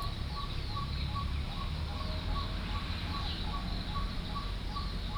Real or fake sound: real